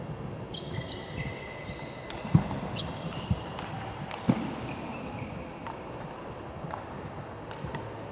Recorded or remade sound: recorded